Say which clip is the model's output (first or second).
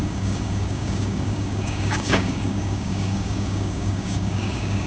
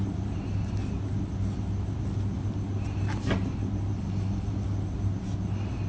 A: first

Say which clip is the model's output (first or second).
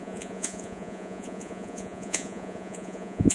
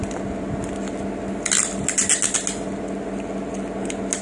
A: first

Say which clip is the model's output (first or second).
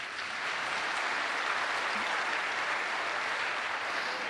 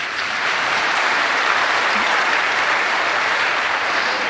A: second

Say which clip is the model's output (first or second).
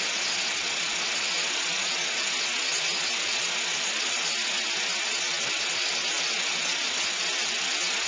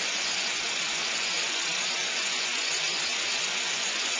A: second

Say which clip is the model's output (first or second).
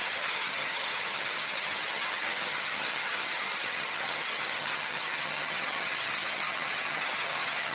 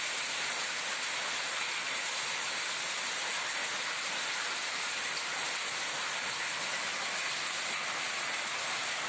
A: first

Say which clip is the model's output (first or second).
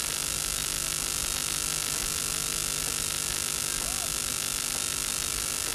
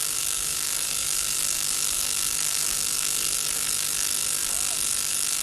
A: second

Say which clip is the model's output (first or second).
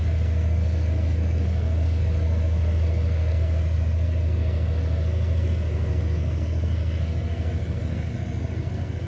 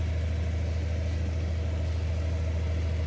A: first